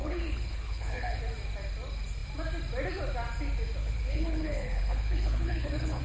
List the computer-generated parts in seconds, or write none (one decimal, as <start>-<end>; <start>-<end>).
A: 0.0-1.2; 3.8-6.0